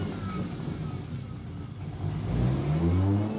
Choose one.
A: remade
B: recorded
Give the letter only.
B